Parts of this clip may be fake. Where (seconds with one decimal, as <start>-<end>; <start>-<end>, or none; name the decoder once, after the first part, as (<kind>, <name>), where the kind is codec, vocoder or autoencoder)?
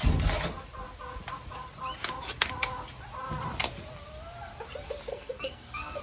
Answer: 5.1-6.0 (codec, SNAC)